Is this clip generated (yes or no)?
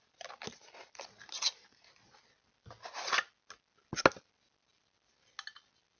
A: no